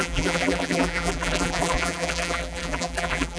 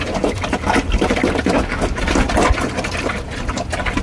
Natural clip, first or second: second